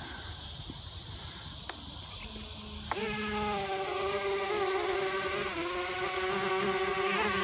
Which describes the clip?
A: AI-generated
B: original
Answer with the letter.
B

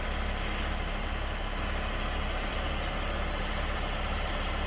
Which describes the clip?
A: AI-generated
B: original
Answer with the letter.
A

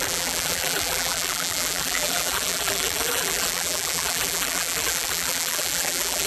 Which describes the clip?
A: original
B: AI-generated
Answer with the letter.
B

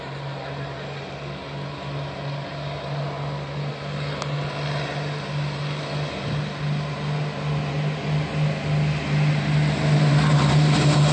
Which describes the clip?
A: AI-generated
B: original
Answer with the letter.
B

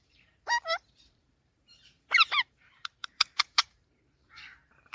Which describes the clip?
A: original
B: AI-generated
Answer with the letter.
B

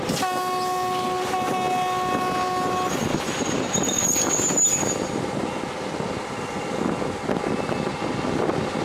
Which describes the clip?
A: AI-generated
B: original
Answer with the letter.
B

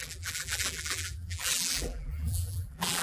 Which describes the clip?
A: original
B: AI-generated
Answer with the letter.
B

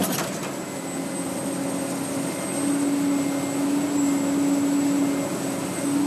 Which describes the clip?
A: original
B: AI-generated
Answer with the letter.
A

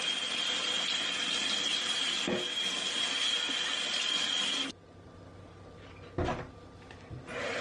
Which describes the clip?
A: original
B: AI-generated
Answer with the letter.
A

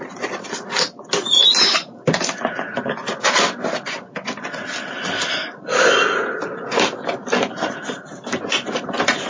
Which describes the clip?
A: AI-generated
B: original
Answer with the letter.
B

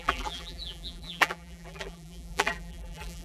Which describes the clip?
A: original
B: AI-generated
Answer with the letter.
B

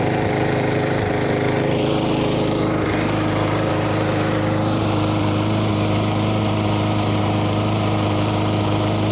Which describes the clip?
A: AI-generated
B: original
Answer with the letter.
A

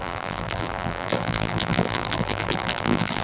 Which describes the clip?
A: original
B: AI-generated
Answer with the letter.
B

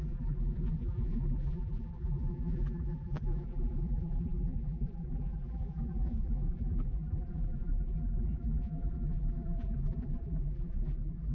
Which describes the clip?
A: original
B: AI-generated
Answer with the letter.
B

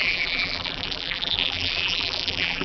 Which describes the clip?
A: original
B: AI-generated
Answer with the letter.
B